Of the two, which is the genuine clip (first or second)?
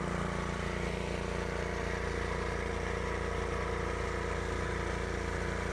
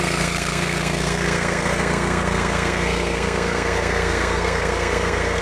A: first